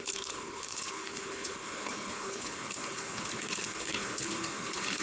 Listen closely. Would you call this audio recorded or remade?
remade